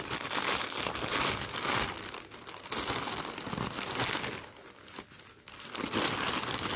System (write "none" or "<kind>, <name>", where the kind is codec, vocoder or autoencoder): none